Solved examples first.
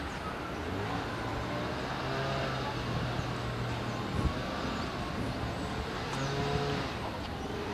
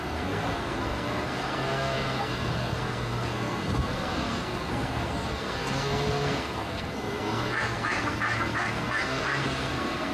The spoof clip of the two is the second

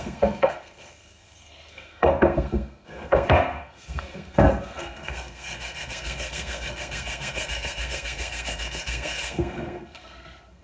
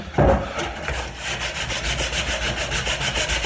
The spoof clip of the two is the first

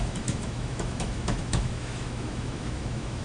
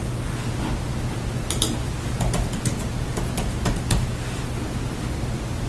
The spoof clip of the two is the first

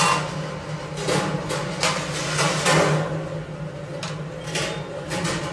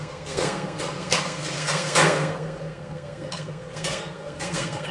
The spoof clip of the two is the second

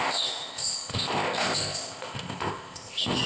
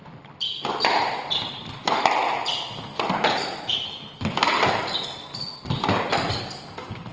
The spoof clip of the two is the first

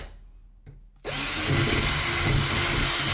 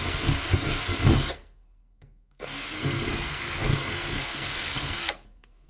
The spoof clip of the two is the second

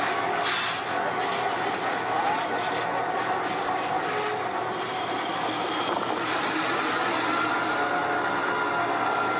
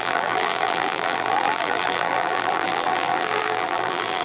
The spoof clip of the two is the second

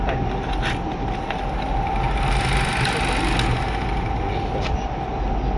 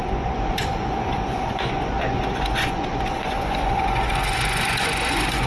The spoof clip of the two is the second